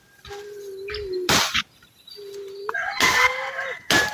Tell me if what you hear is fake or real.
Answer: real